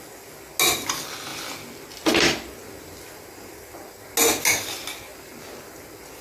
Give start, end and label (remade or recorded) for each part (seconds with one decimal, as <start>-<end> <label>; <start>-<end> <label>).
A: 0.0-6.2 recorded